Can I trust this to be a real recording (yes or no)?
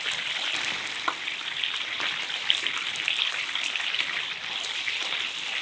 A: no